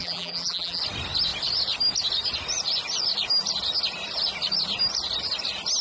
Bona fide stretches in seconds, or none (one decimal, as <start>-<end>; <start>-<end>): 0.8-5.8